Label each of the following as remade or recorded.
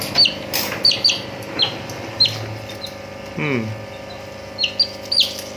recorded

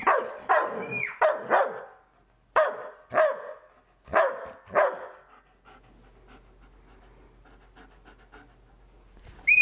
recorded